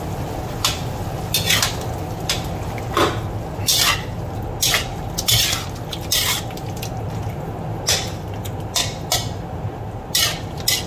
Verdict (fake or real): real